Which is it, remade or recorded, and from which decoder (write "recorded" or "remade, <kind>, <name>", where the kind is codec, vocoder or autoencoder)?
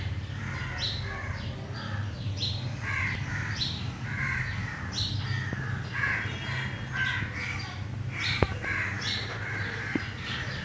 recorded